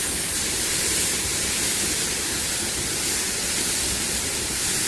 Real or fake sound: fake